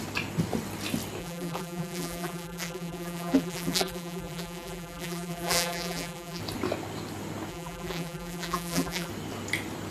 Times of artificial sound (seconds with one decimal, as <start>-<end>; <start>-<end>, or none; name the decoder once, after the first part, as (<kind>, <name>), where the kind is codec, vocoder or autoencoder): 1.2-6.4 (vocoder, BigVGAN v2); 7.5-9.1